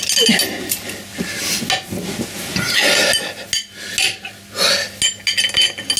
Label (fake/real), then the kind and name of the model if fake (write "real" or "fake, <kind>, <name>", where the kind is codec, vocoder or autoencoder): real